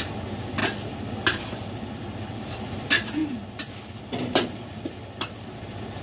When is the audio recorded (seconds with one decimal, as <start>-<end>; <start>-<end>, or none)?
0.0-6.0